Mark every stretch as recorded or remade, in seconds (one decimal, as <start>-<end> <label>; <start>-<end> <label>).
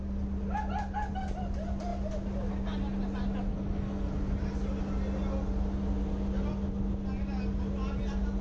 0.0-3.5 recorded; 3.5-4.1 remade; 4.1-8.4 recorded